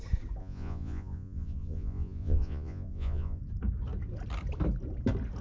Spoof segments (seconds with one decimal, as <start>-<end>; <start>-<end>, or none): 0.4-3.4